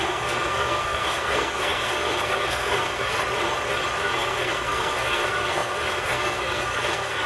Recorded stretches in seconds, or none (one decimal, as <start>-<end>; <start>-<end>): 3.2-4.0